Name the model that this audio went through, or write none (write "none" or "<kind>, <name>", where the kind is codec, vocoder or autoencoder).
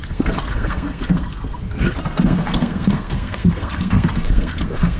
codec, SNAC